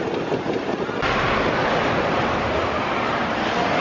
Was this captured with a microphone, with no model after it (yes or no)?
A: yes